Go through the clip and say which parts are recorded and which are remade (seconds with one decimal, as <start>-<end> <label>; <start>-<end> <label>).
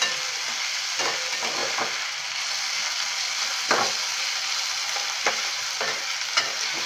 0.0-6.9 recorded